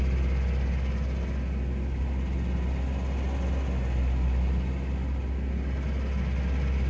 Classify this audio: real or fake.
real